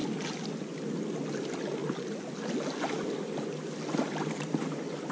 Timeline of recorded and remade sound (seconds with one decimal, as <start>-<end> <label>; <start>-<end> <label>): 0.0-5.1 recorded

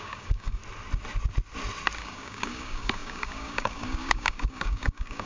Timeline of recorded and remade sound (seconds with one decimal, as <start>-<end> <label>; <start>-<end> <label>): 0.0-0.6 remade; 0.6-2.0 recorded; 2.0-5.3 remade

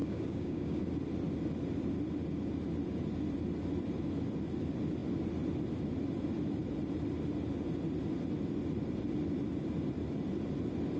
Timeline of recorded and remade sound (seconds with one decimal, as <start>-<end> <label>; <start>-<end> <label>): 0.0-0.8 remade; 0.8-11.0 recorded

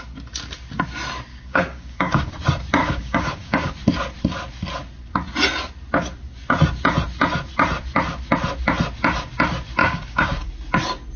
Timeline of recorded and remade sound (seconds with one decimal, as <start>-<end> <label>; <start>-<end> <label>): 0.0-1.3 recorded; 1.3-2.3 remade; 2.3-2.8 recorded; 2.8-3.7 remade; 3.7-9.8 recorded; 9.8-10.5 remade; 10.5-11.2 recorded

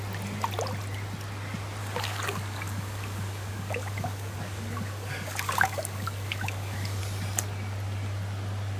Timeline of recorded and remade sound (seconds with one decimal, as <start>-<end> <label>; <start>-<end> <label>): 0.0-1.8 recorded; 1.8-7.0 remade; 7.0-8.8 recorded